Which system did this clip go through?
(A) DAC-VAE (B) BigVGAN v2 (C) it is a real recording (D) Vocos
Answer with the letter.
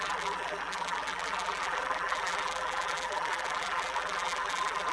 B